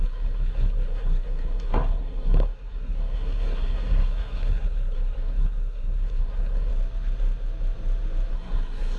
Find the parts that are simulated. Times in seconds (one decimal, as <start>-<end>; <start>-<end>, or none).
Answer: 0.0-6.7; 8.3-9.0